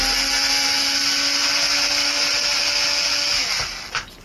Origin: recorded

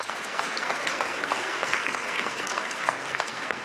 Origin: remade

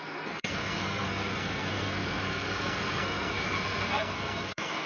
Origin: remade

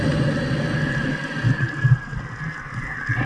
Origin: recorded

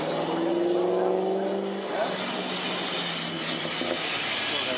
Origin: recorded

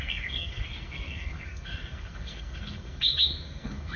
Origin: remade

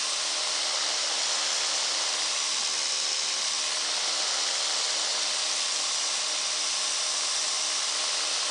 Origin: recorded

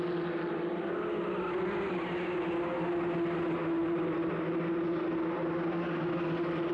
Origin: recorded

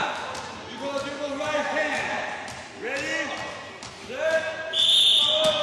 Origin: recorded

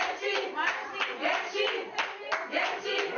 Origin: recorded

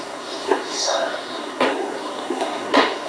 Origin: remade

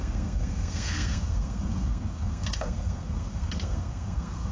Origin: remade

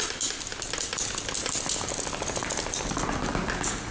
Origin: recorded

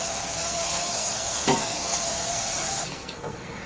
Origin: remade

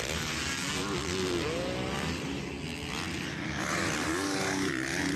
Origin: recorded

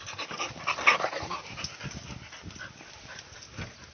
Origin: recorded